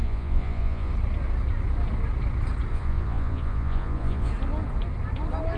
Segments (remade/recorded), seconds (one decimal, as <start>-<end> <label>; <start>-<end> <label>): 0.0-0.9 remade; 0.9-2.7 recorded; 2.7-4.3 remade; 4.3-5.6 recorded